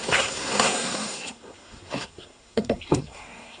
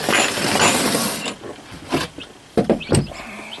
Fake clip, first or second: first